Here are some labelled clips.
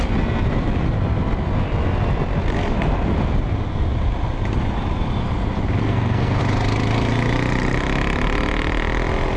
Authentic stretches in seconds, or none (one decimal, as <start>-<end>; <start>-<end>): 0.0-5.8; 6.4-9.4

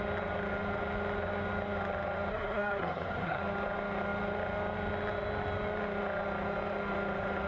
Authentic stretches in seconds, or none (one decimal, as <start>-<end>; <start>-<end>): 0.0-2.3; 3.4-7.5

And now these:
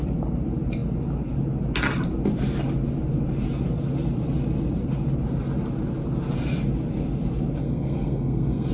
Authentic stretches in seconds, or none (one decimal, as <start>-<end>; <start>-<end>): 0.0-7.6

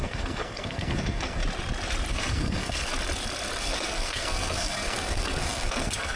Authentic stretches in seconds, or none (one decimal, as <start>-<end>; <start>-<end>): 1.4-2.1; 2.9-3.6